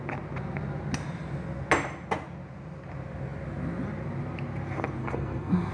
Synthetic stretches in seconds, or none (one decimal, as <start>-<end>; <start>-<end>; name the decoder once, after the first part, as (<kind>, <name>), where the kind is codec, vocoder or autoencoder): 5.0-5.7 (codec, SNAC)